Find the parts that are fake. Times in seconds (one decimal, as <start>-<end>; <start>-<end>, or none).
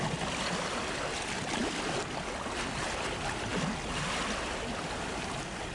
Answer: none